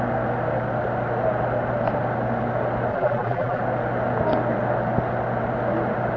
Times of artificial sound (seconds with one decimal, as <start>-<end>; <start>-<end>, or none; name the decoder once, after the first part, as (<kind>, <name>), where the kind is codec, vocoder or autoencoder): 2.9-3.6 (vocoder, BigVGAN v2)